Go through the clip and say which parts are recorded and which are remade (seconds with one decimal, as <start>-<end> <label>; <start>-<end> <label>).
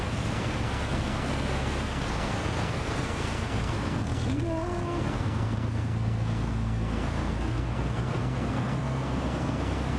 0.0-10.0 remade